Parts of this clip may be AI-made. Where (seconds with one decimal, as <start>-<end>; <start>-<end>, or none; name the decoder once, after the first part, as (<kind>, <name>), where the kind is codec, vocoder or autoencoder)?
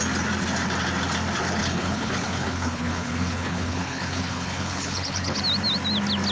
1.6-5.4 (codec, HILCodec)